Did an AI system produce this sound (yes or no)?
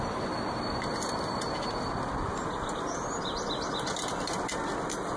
no